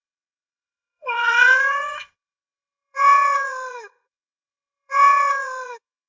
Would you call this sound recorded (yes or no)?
no